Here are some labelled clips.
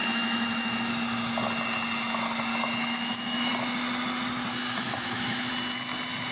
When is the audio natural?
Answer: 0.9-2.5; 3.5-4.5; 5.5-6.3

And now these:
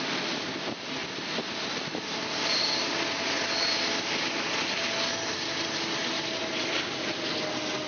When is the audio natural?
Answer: 0.0-7.9

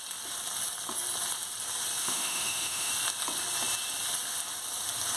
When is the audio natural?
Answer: 0.0-2.0; 2.9-5.2